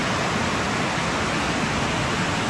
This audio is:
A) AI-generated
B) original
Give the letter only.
B